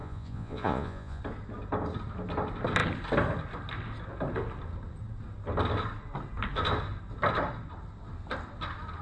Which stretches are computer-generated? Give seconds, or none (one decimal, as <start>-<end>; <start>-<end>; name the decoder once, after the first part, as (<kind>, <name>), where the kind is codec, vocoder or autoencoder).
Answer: 0.0-1.2 (vocoder, Vocos)